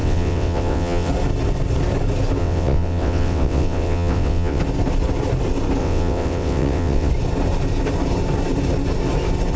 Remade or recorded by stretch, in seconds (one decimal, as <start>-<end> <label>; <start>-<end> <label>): 0.0-1.1 remade; 1.1-2.4 recorded; 2.4-4.6 remade; 4.6-5.8 recorded; 5.8-7.1 remade; 7.1-9.6 recorded

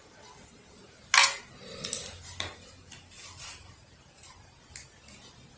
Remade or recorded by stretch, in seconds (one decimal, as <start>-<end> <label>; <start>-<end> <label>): 0.0-5.6 recorded

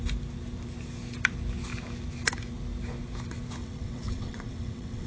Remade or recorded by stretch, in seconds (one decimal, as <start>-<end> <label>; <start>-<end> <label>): 0.0-3.6 recorded; 3.6-5.1 remade

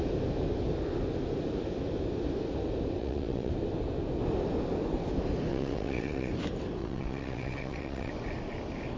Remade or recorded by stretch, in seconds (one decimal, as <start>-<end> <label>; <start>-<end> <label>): 0.0-3.0 recorded; 3.0-3.5 remade; 3.5-5.5 recorded; 5.5-6.3 remade; 6.3-6.8 recorded; 6.8-8.1 remade; 8.1-9.0 recorded

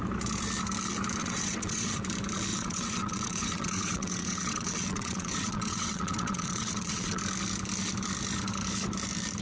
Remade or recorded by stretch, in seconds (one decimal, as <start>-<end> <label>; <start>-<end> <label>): 0.0-1.2 recorded; 1.2-2.0 remade; 2.0-2.5 recorded; 2.5-7.2 remade; 7.2-9.4 recorded

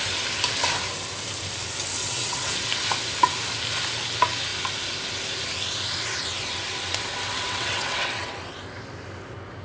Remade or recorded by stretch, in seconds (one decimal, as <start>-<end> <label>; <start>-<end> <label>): 0.0-2.0 recorded; 2.0-2.5 remade; 2.5-7.1 recorded; 7.1-8.3 remade; 8.3-9.6 recorded